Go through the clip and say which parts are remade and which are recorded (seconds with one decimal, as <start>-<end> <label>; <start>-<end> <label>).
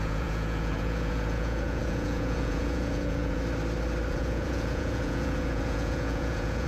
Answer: 0.0-3.4 remade; 3.4-4.1 recorded; 4.1-6.7 remade